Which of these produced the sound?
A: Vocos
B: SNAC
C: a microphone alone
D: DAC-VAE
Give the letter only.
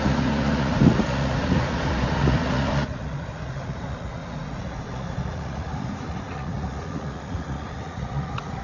A